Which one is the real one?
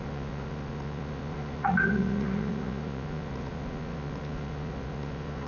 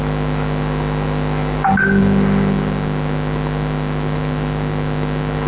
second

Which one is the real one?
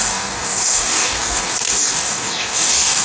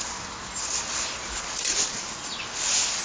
second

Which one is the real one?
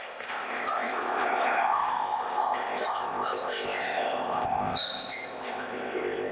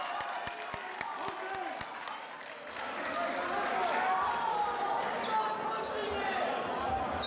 second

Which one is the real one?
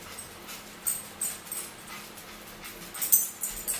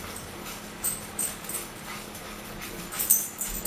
first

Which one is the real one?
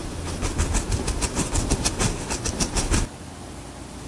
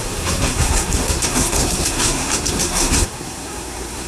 first